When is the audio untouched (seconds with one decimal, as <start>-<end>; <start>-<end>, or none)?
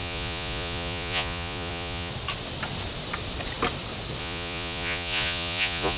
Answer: 2.1-4.2